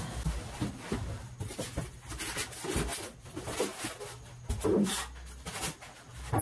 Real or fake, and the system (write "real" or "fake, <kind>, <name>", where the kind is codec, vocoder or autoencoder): real